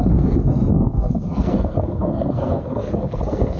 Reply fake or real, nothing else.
fake